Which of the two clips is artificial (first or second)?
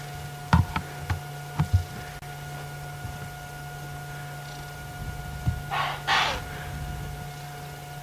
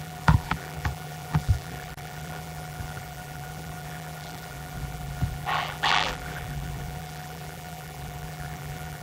second